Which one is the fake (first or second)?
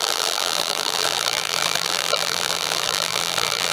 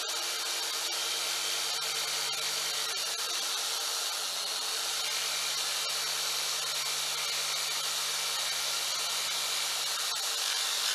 first